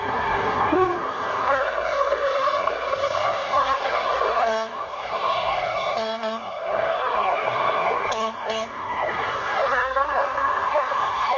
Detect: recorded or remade remade